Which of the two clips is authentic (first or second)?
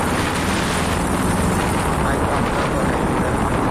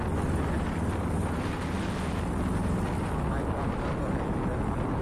second